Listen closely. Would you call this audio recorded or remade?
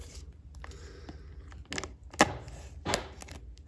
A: recorded